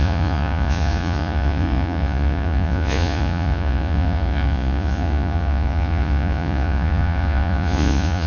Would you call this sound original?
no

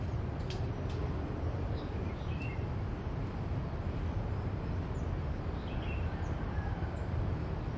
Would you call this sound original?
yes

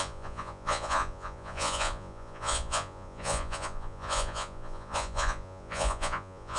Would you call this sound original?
no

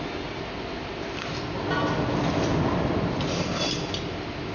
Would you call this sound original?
yes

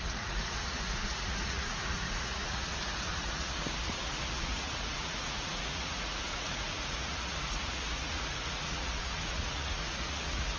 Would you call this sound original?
no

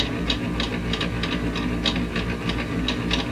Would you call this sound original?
yes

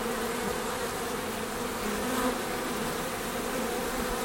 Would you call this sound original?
yes